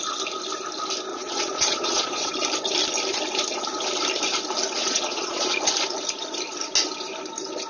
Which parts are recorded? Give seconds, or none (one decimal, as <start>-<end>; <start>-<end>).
0.0-1.1; 2.3-4.8; 5.5-7.7